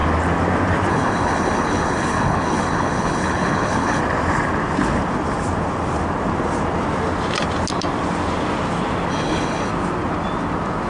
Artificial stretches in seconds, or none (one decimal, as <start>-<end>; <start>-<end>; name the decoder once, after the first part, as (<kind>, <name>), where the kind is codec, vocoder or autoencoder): 0.9-4.0 (codec, HILCodec); 9.1-9.7